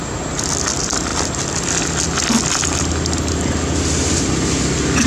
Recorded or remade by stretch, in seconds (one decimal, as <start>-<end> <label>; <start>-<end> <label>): 0.0-5.1 recorded